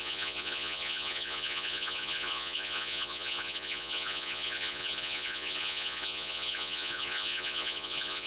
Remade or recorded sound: remade